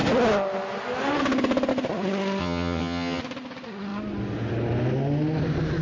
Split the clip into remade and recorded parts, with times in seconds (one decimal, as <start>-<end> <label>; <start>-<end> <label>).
0.0-2.4 recorded; 2.4-3.2 remade; 3.2-5.8 recorded